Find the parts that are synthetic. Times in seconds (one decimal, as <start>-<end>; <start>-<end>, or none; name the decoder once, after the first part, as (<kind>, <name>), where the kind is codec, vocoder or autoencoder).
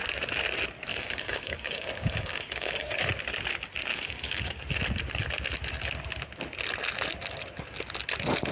0.9-3.0 (codec, DAC); 3.9-4.6